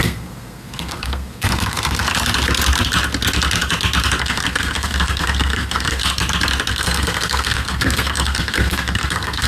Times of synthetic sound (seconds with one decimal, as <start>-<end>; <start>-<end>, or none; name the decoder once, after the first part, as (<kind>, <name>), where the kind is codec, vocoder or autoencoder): 0.0-2.1 (codec, SNAC); 4.2-6.0; 6.7-9.5